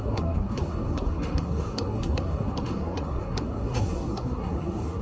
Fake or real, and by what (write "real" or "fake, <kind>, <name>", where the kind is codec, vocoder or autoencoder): fake, codec, SNAC